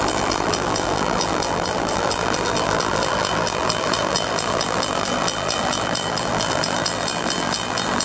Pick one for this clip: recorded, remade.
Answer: remade